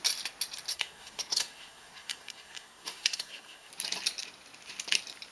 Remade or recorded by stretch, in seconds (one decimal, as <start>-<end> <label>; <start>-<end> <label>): 0.0-0.7 recorded; 0.7-3.7 remade; 3.7-5.3 recorded